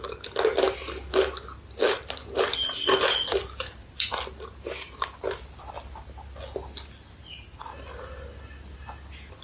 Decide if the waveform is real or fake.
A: real